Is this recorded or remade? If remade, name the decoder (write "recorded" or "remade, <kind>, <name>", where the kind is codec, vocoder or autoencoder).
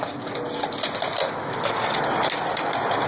recorded